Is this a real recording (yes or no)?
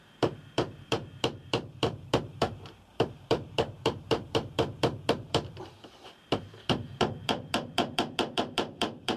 no